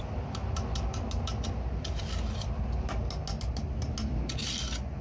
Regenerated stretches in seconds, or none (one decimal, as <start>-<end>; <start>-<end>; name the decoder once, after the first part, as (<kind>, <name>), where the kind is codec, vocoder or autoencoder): none